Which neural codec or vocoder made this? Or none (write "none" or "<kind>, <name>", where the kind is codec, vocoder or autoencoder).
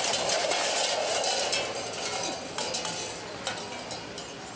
none